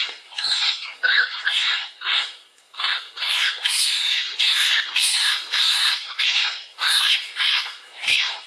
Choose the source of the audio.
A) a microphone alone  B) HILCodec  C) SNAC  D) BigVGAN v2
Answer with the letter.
C